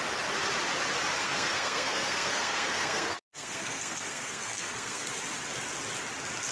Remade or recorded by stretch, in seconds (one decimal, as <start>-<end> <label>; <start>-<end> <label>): 0.0-1.2 recorded; 1.2-5.1 remade; 5.1-6.5 recorded